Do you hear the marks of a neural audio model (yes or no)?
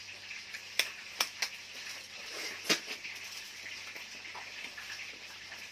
no